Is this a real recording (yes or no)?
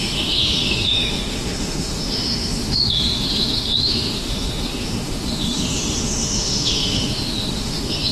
no